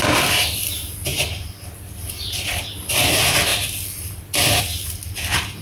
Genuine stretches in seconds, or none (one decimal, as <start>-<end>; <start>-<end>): 0.0-5.6